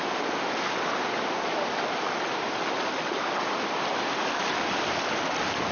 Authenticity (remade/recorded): recorded